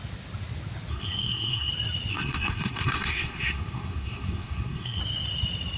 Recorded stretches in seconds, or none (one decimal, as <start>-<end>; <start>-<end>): 0.0-0.9; 1.7-2.1; 5.0-5.8